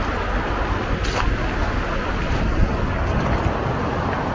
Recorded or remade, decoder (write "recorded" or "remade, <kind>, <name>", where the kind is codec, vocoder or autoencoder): recorded